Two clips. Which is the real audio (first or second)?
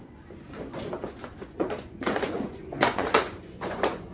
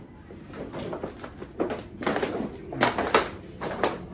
second